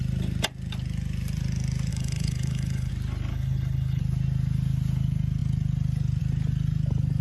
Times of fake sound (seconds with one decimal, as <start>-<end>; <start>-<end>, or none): 1.9-2.9; 3.3-4.0